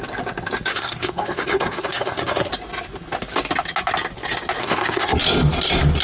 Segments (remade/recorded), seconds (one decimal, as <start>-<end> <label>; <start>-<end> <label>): 0.0-0.7 recorded; 0.7-2.5 remade; 2.5-4.6 recorded; 4.6-5.2 remade; 5.2-6.0 recorded